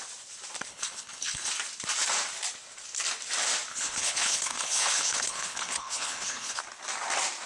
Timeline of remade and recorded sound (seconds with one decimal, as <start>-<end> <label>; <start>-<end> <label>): 0.0-0.7 recorded; 0.7-1.5 remade; 1.5-3.7 recorded; 3.7-6.6 remade; 6.6-7.5 recorded